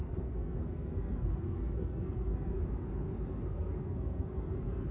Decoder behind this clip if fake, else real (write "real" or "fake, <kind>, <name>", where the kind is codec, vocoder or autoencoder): fake, codec, SNAC